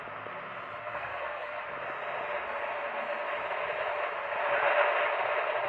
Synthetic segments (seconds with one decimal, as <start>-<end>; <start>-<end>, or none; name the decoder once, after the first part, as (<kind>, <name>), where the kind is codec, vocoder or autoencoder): 0.8-1.6 (codec, SNAC)